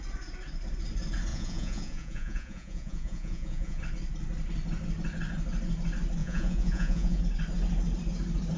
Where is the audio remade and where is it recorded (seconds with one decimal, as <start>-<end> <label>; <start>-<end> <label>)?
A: 0.0-1.3 recorded; 1.3-3.8 remade; 3.8-6.2 recorded; 6.2-7.2 remade; 7.2-8.6 recorded